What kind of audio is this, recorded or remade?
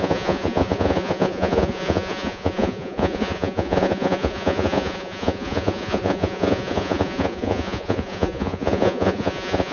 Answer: remade